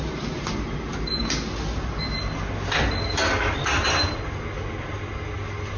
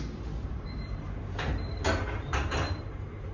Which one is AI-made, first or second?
second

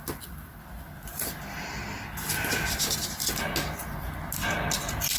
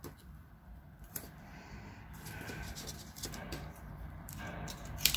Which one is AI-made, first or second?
second